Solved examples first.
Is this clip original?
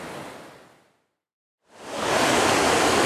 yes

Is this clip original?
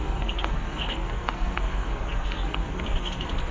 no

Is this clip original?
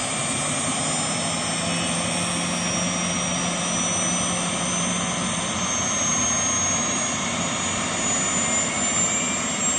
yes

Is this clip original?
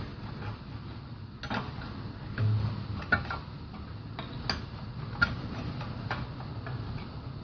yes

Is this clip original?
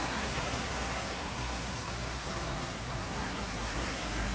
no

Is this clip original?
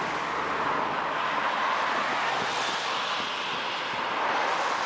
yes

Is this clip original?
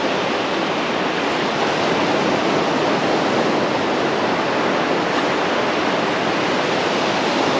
yes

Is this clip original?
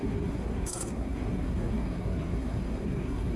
no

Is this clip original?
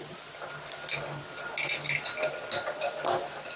yes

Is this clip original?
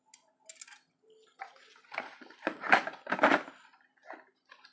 yes